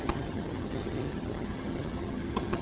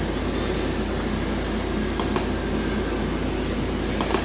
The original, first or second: second